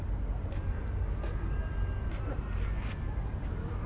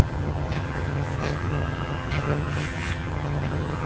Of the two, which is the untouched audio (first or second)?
first